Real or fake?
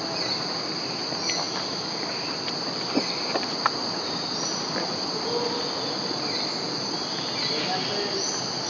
real